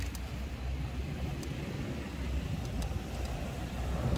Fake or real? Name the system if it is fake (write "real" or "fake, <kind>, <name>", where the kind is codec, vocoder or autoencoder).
real